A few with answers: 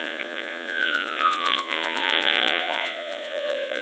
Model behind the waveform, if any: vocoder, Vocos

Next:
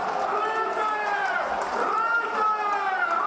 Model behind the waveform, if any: none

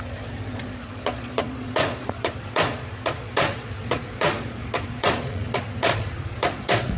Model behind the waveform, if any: vocoder, Vocos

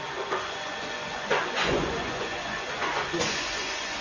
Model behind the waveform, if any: vocoder, Vocos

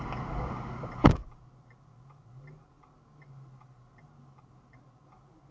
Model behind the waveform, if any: none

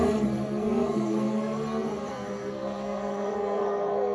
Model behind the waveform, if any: codec, SNAC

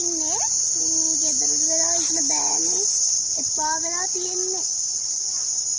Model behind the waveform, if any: none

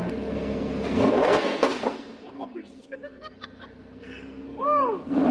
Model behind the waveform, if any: codec, SNAC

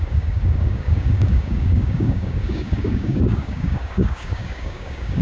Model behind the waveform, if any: codec, DAC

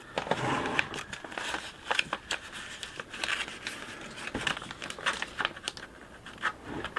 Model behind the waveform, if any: none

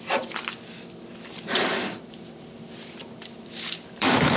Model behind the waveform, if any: vocoder, BigVGAN v2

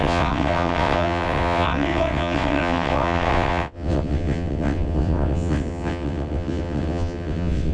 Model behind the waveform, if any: vocoder, WaveNeXt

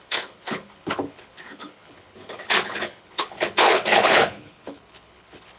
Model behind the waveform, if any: codec, HILCodec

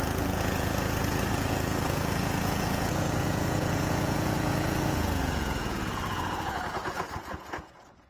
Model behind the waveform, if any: vocoder, Vocos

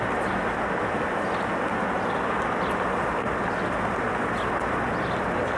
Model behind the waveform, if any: none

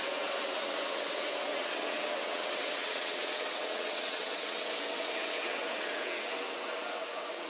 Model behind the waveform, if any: vocoder, WaveNeXt